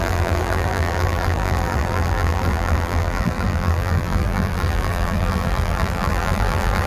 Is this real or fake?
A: fake